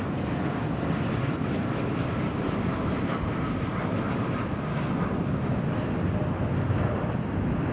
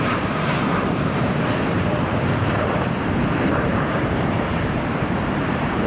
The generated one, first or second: second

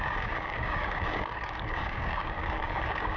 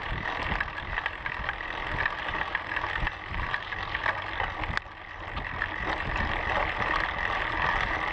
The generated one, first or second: first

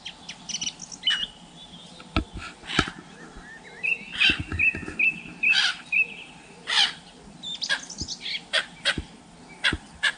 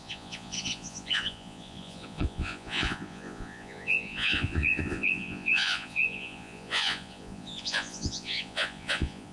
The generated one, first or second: second